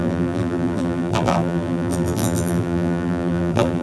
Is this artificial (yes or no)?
yes